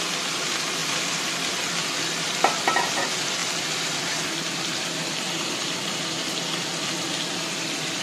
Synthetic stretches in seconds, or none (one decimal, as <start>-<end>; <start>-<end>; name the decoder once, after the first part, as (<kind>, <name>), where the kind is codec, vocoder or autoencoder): none